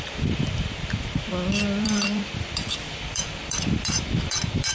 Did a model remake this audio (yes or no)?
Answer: yes